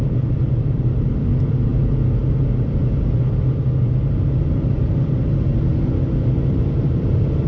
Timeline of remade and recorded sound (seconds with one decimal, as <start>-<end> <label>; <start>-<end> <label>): 0.0-1.7 remade; 1.7-2.3 recorded; 2.3-7.5 remade